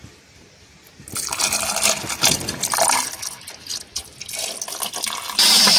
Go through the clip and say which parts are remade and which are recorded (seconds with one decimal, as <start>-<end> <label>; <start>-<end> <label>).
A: 0.0-5.8 recorded

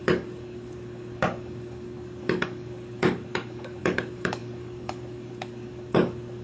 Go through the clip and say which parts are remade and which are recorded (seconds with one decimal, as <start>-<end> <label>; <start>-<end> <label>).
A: 0.0-6.4 remade